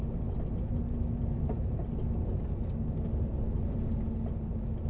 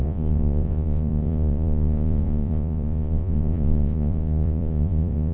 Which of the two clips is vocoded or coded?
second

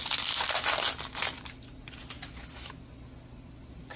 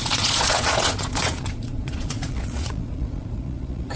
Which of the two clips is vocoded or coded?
second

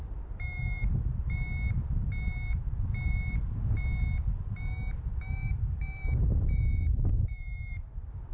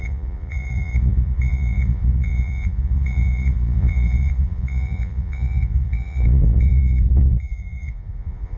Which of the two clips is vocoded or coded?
second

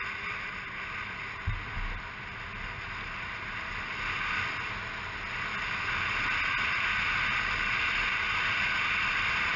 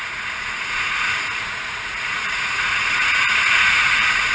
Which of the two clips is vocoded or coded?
second